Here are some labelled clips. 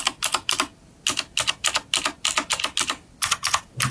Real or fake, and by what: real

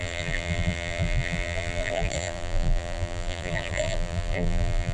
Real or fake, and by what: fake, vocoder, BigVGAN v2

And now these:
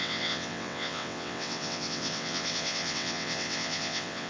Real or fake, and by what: fake, vocoder, WaveNeXt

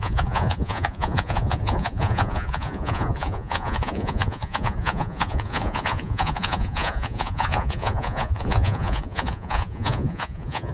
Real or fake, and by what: fake, vocoder, Vocos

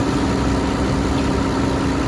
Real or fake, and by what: real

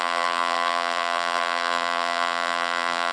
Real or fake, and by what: fake, vocoder, BigVGAN v2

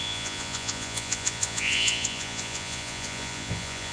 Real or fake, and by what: fake, vocoder, Vocos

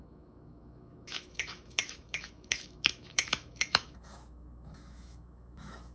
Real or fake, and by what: fake, autoencoder, DAC-VAE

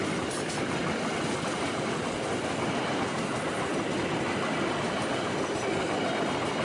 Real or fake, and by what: real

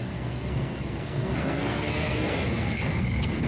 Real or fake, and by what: fake, codec, SNAC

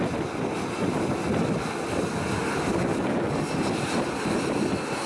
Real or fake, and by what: real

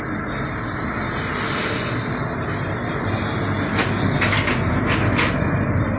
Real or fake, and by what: real